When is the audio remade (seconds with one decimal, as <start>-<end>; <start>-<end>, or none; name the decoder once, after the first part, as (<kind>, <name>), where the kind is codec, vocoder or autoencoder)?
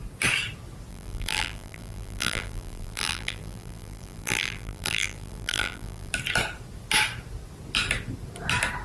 0.9-6.1 (vocoder, BigVGAN v2)